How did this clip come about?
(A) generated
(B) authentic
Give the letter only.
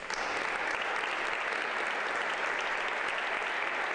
B